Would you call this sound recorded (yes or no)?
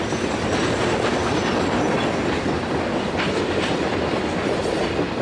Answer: yes